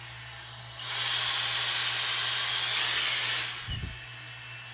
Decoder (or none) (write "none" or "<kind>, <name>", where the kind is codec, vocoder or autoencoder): none